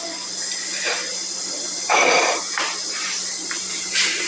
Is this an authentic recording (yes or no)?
yes